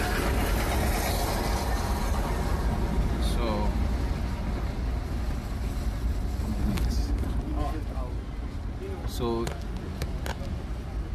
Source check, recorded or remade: recorded